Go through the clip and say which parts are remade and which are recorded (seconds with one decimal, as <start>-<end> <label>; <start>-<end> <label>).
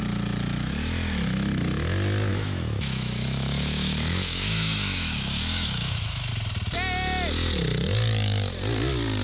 0.0-2.3 recorded; 2.3-6.3 remade; 6.3-9.2 recorded